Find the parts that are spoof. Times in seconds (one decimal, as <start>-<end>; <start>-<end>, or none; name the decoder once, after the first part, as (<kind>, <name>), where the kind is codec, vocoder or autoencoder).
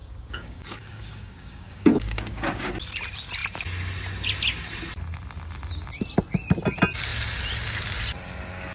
0.0-2.7 (codec, DAC)